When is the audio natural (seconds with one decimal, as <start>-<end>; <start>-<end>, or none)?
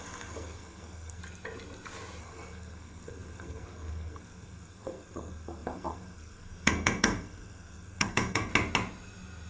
1.2-2.2; 8.5-9.5